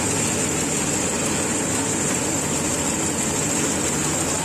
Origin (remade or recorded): recorded